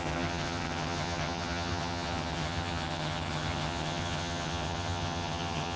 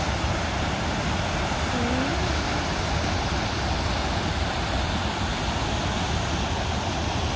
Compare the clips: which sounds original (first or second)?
second